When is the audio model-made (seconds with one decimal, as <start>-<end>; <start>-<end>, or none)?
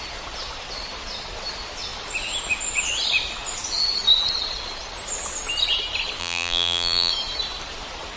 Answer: 6.2-7.1